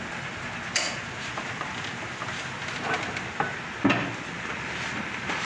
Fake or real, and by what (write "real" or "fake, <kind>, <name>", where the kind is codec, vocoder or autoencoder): real